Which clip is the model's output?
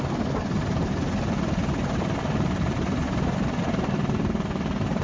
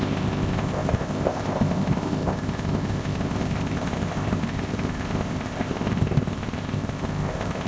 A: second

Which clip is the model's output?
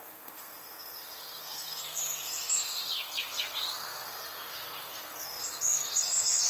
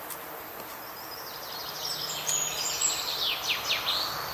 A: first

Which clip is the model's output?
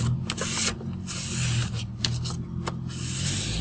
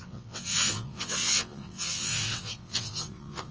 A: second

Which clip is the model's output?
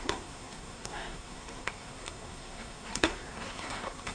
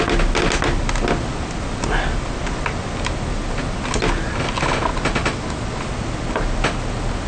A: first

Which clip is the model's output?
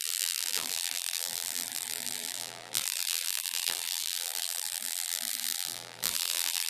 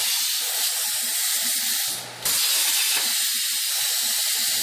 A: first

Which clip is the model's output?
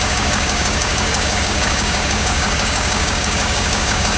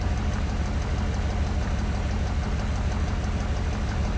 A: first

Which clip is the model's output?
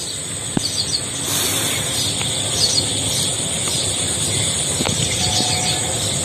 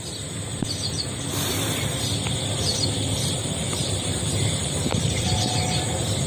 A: second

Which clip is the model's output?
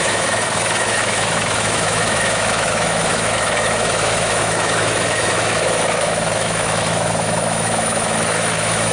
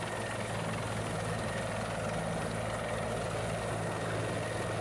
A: first